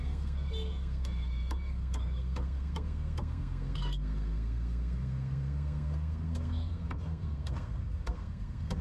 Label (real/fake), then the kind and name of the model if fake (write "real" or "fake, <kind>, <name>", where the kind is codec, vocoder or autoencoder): fake, codec, SNAC